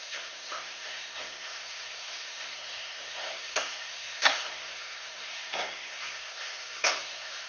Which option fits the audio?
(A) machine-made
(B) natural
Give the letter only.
A